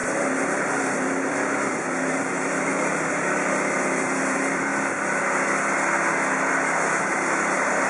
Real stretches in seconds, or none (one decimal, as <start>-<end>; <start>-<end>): 4.7-7.1